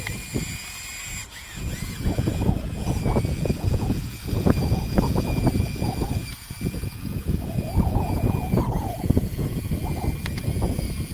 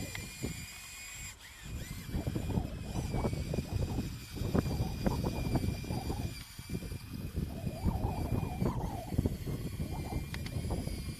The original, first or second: second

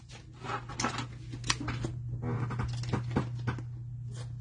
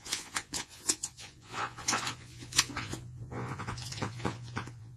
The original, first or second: first